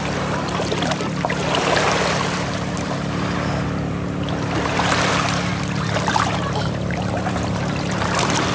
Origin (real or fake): fake